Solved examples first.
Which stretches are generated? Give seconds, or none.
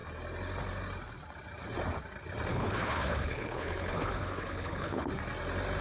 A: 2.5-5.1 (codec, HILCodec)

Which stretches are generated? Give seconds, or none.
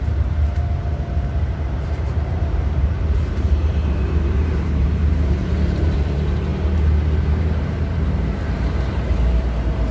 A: 0.0-6.5 (vocoder, BigVGAN v2); 7.3-9.9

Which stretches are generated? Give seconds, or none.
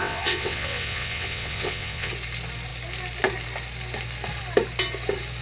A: 0.0-2.1 (vocoder, WaveNeXt)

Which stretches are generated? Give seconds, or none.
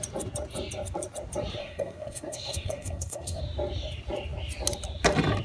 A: 1.6-3.4 (codec, SNAC)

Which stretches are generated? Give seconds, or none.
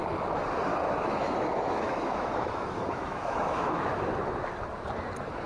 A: 0.7-4.0 (autoencoder, DAC-VAE)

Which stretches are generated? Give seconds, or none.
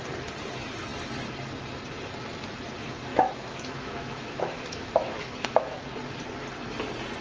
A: 3.1-5.8 (autoencoder, DAC-VAE)